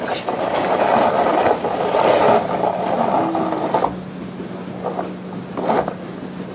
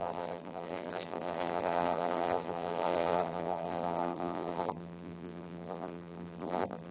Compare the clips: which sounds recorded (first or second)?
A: first